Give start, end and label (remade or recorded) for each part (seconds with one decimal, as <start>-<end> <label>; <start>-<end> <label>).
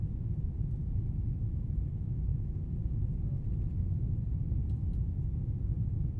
0.0-6.2 recorded